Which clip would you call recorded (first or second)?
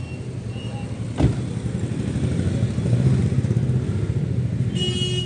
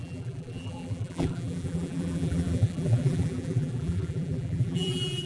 first